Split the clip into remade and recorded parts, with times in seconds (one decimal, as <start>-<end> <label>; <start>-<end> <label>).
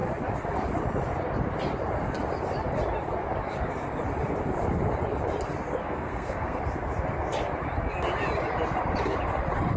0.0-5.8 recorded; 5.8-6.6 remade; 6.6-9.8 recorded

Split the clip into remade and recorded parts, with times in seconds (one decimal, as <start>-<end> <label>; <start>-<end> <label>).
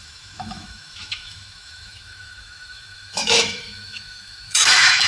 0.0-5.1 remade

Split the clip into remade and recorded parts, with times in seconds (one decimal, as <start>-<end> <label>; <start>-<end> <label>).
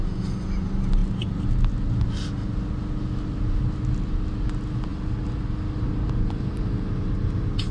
0.0-7.7 recorded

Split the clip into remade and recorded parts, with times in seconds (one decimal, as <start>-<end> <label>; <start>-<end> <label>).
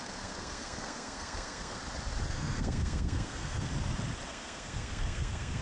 0.0-1.8 remade; 1.8-2.3 recorded; 2.3-3.7 remade; 3.7-4.3 recorded; 4.3-5.6 remade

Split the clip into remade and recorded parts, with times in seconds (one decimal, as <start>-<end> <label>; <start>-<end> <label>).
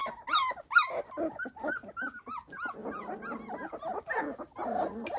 0.0-5.2 recorded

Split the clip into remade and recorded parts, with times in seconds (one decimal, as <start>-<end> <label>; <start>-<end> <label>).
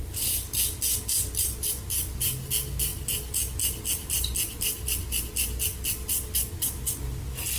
0.0-7.6 recorded